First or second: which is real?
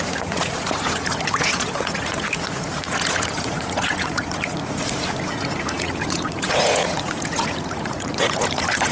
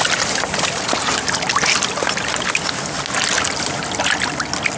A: second